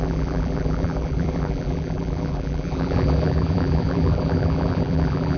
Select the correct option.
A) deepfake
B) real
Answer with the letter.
A